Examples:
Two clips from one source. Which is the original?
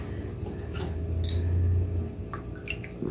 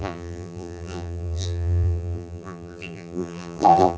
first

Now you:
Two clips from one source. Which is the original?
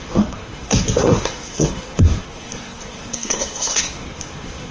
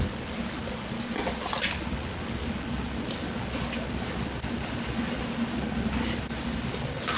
second